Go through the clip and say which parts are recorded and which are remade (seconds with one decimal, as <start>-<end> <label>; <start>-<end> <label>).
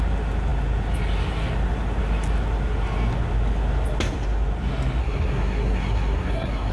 0.0-5.0 recorded; 5.0-6.7 remade